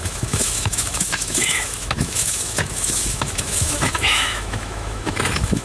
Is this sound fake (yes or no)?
yes